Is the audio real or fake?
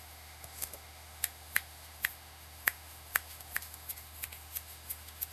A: fake